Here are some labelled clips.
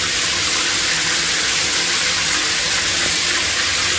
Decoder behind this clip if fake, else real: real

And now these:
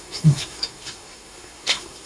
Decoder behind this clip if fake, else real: fake, codec, SNAC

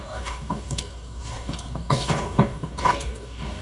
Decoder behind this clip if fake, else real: fake, codec, DAC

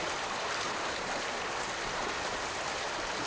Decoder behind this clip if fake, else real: real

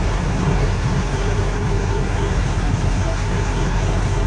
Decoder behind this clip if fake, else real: fake, codec, SNAC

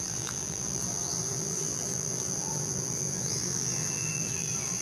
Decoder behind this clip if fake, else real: fake, vocoder, BigVGAN v2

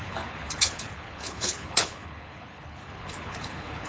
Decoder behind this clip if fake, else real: fake, codec, HILCodec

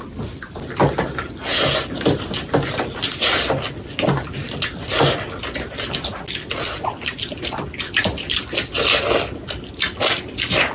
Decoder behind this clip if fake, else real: real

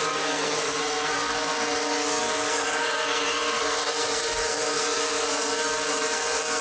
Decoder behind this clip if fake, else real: fake, codec, SNAC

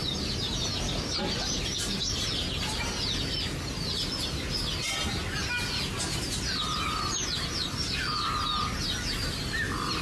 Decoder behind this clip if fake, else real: real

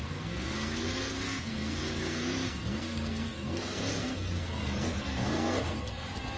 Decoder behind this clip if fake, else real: fake, codec, SNAC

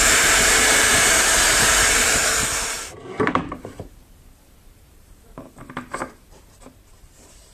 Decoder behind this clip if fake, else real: fake, vocoder, BigVGAN v2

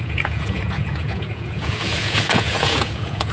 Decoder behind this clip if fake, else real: fake, vocoder, Vocos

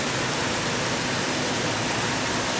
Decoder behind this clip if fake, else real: real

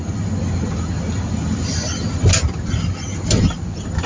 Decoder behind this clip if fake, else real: real